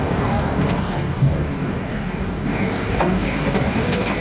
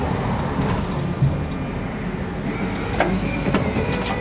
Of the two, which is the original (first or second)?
second